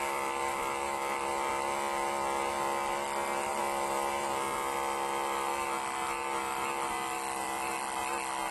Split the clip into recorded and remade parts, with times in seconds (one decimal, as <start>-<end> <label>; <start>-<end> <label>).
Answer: 0.0-1.5 remade; 1.5-3.6 recorded; 3.6-5.5 remade; 5.5-6.9 recorded; 6.9-8.5 remade